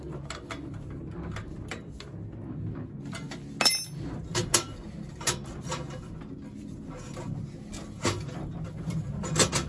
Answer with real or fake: real